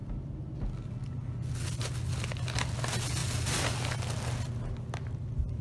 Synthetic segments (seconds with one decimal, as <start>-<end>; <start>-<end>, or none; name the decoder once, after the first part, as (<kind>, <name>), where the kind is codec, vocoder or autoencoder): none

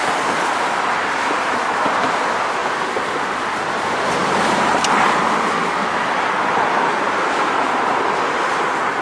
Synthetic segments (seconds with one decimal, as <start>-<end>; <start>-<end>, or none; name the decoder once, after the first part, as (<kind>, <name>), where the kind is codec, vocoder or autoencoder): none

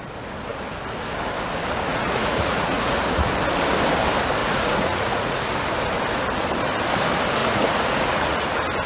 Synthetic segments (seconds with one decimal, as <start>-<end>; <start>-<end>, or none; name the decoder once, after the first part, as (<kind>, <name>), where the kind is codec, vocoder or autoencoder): 1.9-3.3 (vocoder, Vocos); 4.4-5.4; 7.4-8.5

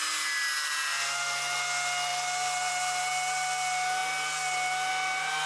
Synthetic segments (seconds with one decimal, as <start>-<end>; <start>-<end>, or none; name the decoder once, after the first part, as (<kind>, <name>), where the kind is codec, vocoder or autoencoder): none

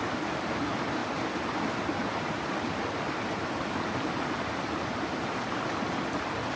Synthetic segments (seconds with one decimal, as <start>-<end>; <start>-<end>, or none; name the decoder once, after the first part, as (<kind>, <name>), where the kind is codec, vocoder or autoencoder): none

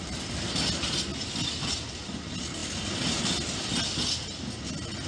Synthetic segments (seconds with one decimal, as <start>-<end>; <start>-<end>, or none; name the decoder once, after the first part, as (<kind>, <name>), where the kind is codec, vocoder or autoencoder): 2.6-3.2 (vocoder, BigVGAN v2)

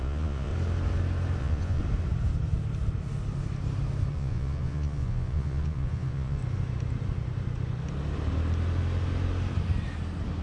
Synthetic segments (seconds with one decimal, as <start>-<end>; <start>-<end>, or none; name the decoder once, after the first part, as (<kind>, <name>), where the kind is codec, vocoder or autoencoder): 0.0-0.5 (vocoder, Vocos); 1.4-1.8; 4.1-6.4

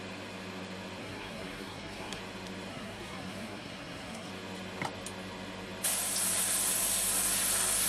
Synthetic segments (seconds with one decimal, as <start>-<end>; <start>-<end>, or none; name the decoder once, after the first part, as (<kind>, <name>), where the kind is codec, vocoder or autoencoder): 1.0-2.2 (codec, SNAC); 2.7-4.3